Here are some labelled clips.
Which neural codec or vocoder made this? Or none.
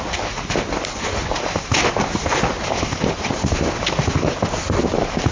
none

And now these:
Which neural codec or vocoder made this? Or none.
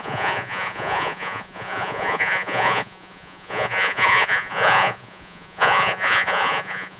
vocoder, Vocos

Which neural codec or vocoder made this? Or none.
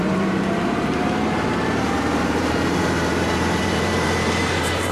vocoder, BigVGAN v2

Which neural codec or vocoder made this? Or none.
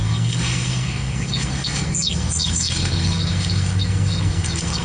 codec, SNAC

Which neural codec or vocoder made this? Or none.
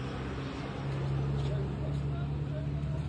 none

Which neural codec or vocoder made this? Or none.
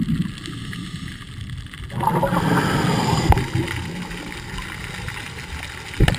none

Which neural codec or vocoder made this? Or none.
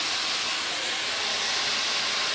none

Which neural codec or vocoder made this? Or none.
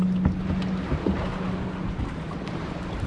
none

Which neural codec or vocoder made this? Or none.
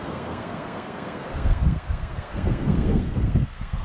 codec, SNAC